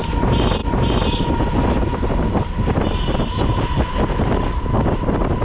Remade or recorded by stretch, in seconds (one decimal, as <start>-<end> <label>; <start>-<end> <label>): 0.0-5.4 recorded